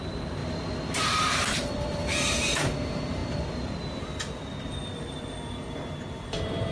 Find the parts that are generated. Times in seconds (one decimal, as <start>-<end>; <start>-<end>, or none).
0.0-0.4; 0.9-3.2; 4.9-6.7